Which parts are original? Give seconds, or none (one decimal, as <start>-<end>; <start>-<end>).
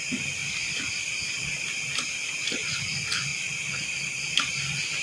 0.0-5.0